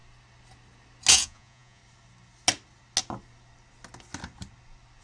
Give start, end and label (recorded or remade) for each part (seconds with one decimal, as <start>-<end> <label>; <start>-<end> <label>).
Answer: 0.0-1.1 recorded; 1.1-1.8 remade; 1.8-5.0 recorded